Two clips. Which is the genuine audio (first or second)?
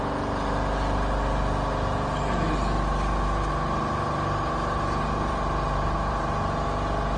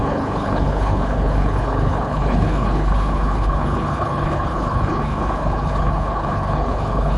first